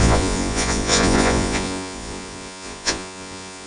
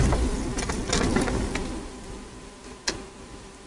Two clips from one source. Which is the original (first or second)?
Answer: second